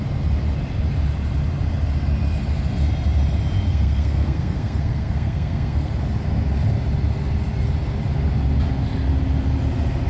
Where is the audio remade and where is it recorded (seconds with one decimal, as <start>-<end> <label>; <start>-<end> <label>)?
0.0-3.7 recorded; 3.7-5.9 remade; 5.9-10.1 recorded